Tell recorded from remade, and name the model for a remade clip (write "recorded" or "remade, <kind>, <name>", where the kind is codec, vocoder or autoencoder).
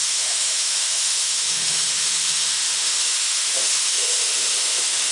remade, autoencoder, DAC-VAE